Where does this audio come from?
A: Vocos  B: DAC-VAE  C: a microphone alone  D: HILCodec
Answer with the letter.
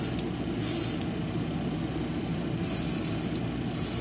C